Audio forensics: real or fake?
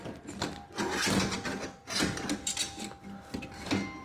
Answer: real